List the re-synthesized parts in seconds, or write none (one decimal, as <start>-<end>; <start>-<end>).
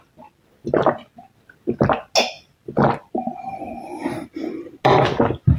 4.0-4.8